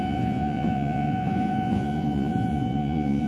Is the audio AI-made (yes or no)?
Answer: yes